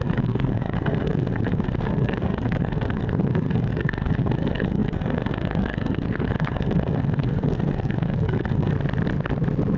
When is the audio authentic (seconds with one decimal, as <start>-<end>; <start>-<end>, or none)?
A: 8.7-9.8

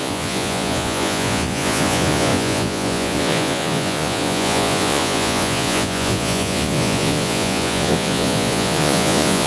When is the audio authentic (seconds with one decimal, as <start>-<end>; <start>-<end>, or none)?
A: none

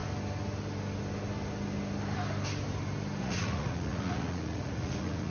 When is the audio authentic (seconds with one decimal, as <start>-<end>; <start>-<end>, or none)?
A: 0.0-3.2